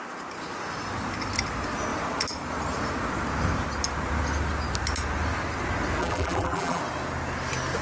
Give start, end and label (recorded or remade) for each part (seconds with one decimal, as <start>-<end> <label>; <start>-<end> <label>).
0.0-6.0 recorded; 6.0-6.8 remade; 6.8-7.8 recorded